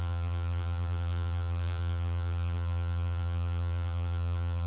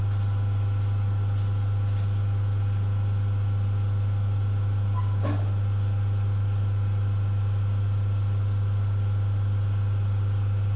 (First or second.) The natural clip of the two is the second